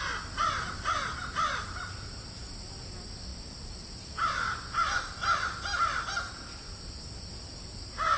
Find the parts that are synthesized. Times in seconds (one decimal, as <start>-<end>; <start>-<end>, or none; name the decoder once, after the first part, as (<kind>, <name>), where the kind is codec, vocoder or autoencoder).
none